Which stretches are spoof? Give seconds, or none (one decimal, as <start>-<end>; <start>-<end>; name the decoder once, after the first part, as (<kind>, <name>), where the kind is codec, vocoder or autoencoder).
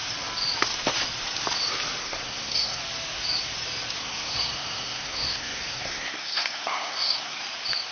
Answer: 2.0-2.8 (codec, SNAC); 4.0-7.4